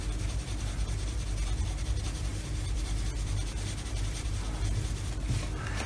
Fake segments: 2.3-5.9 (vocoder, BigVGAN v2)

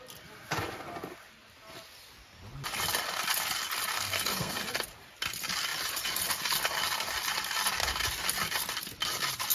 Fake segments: 3.9-4.6 (codec, SNAC)

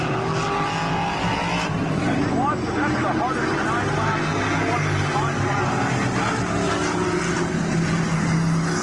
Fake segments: none